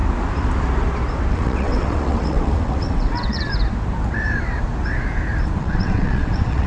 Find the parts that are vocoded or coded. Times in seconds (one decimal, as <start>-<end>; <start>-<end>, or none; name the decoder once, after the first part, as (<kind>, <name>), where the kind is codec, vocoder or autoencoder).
1.3-3.5 (vocoder, WaveNeXt); 5.6-6.7